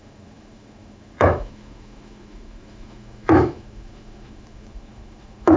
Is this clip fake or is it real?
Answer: fake